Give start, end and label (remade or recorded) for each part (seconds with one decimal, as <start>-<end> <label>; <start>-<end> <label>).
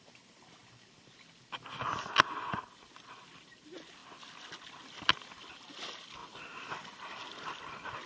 0.0-0.6 recorded; 0.6-1.7 remade; 1.7-8.1 recorded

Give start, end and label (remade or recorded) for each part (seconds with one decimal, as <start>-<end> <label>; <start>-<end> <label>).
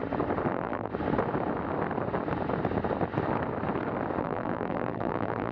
0.0-0.5 recorded; 0.5-0.9 remade; 0.9-4.2 recorded; 4.2-5.5 remade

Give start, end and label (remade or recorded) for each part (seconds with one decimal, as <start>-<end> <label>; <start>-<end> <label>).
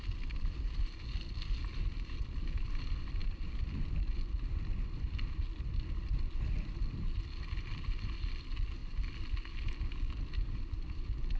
0.0-11.4 recorded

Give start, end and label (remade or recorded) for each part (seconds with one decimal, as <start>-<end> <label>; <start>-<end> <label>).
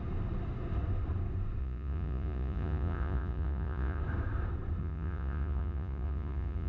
0.0-1.6 recorded; 1.6-4.0 remade; 4.0-4.8 recorded; 4.8-6.7 remade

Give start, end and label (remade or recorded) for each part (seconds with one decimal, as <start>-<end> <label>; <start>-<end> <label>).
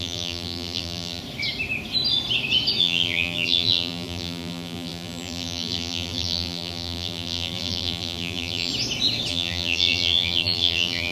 0.0-1.2 remade; 1.2-2.8 recorded; 2.8-8.7 remade; 8.7-9.3 recorded; 9.3-11.1 remade